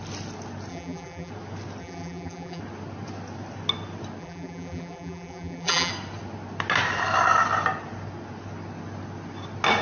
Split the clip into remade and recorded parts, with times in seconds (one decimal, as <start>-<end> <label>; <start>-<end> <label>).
0.0-0.7 recorded; 0.7-1.3 remade; 1.3-1.8 recorded; 1.8-2.6 remade; 2.6-4.2 recorded; 4.2-5.9 remade; 5.9-9.8 recorded